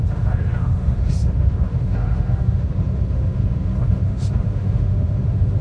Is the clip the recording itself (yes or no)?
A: no